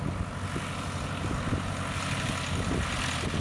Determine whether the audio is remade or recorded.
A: recorded